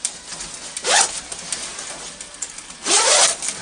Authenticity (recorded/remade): recorded